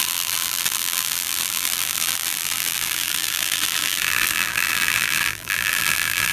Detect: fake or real fake